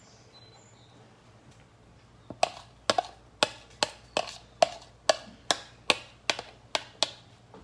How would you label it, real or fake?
real